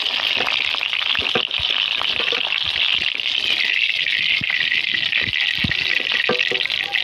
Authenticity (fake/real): real